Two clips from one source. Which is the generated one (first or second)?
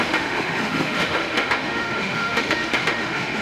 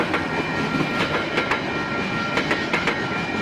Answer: first